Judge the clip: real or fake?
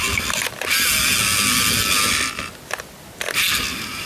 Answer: real